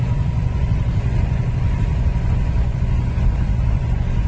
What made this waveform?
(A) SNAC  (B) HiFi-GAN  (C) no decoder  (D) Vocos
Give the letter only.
D